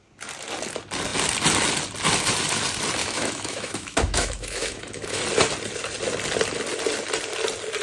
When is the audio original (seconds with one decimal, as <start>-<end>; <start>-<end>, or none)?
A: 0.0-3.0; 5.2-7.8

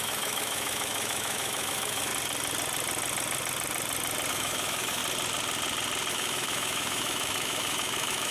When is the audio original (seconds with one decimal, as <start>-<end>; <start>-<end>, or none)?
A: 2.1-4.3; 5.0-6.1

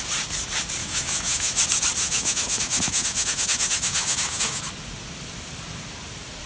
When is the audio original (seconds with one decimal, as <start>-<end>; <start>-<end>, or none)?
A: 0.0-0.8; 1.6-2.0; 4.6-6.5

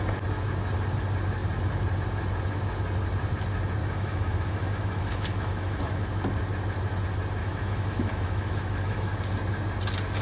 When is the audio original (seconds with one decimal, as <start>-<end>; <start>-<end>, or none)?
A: 0.0-3.8; 5.8-7.4; 9.2-10.2

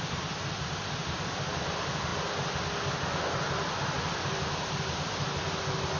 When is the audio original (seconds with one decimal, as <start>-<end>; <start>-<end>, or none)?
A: 0.0-6.0